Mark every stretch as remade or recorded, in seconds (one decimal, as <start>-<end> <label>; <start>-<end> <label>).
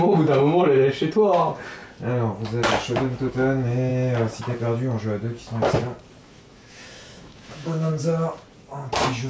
0.0-6.2 recorded; 6.2-7.9 remade; 7.9-9.3 recorded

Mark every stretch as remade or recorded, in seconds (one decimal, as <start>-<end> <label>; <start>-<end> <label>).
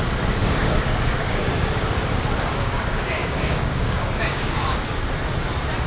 0.0-0.4 recorded; 0.4-1.7 remade; 1.7-2.5 recorded; 2.5-4.8 remade; 4.8-5.9 recorded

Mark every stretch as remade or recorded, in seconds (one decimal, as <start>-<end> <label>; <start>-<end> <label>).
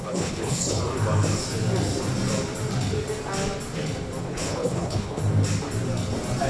0.0-0.8 remade; 0.8-4.2 recorded; 4.2-5.2 remade; 5.2-6.5 recorded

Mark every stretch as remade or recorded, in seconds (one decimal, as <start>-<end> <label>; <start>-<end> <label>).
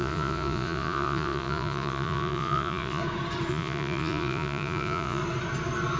0.0-3.0 remade; 3.0-3.5 recorded; 3.5-5.2 remade; 5.2-6.0 recorded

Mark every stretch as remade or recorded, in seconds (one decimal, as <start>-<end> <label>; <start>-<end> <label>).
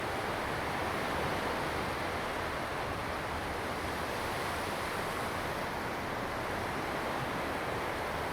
0.0-8.3 recorded